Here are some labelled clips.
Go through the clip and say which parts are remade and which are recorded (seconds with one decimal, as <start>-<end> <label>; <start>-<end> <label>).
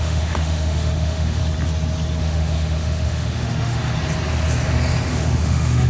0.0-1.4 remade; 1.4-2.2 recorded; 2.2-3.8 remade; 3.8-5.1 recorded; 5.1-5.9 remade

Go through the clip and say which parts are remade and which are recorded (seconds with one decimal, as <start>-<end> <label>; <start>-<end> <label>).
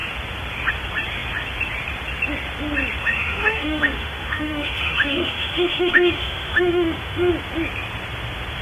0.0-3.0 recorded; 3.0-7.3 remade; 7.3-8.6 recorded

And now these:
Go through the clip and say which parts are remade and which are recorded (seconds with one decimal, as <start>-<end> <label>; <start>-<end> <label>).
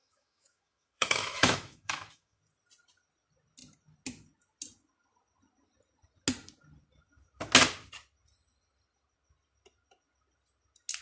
0.0-2.4 remade; 2.4-11.0 recorded